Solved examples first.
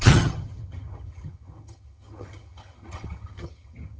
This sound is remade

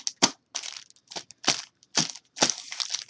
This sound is recorded